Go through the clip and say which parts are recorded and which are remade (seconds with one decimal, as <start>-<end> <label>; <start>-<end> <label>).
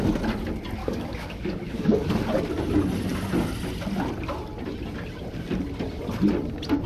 0.0-0.8 recorded; 0.8-2.1 remade; 2.1-6.9 recorded